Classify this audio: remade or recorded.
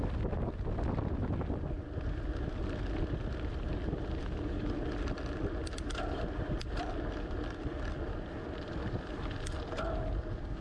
recorded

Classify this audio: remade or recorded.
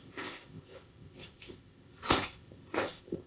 remade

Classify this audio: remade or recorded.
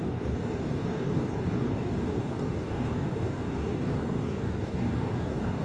remade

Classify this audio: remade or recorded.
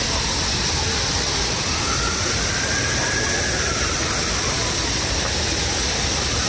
recorded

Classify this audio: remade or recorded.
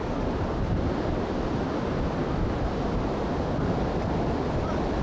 recorded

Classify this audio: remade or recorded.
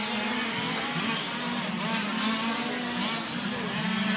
recorded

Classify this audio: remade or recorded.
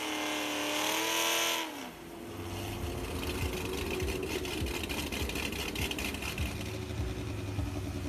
recorded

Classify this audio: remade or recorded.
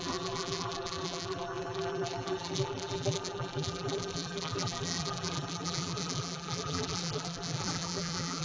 remade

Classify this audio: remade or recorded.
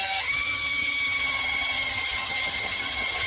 remade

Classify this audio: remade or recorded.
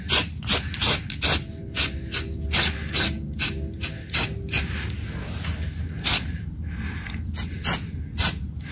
recorded